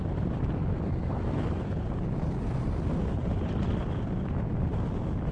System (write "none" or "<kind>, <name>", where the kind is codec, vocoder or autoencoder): none